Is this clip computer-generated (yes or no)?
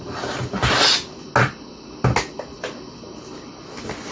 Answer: no